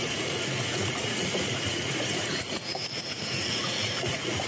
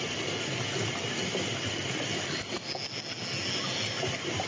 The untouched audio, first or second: second